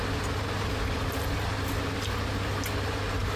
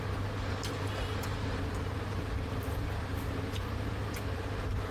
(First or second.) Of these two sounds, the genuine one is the first